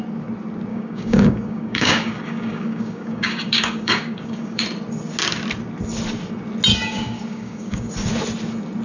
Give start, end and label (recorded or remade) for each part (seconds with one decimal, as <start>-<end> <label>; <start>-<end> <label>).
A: 0.0-0.7 recorded; 0.7-4.6 remade; 4.6-6.7 recorded; 6.7-7.9 remade; 7.9-8.8 recorded